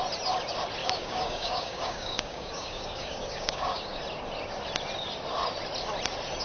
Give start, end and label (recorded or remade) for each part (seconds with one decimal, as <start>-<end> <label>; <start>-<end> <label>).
0.0-0.8 recorded; 0.8-4.0 remade; 4.0-6.4 recorded